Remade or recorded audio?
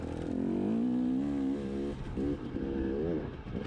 recorded